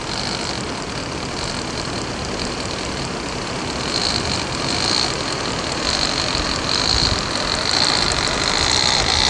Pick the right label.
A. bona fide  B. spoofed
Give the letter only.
A